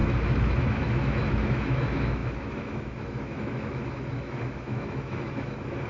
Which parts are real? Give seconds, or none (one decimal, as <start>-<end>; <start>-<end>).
none